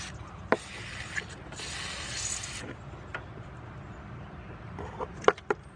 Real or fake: real